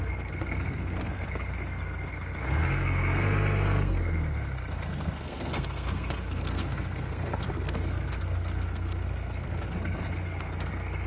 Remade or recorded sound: remade